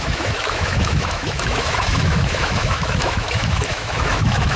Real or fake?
fake